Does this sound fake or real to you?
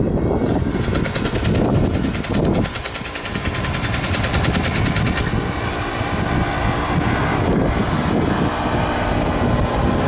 real